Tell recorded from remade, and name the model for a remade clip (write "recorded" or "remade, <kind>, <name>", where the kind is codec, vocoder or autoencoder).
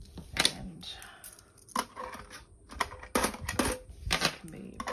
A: recorded